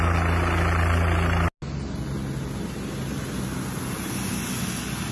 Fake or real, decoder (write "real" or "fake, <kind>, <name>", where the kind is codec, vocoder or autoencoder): real